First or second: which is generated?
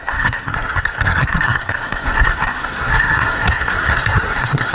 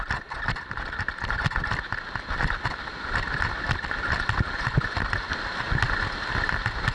first